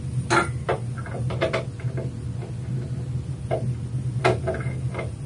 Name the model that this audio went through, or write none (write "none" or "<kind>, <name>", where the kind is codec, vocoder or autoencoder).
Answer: none